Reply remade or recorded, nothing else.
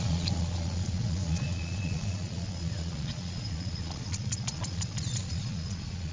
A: remade